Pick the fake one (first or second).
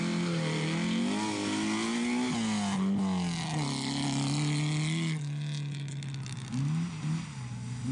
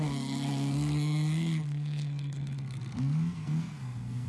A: second